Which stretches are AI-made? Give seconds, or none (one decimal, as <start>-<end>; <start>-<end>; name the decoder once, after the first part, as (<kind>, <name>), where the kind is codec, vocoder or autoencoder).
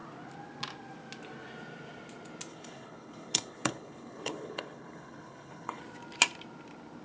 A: 2.5-5.8 (codec, HILCodec)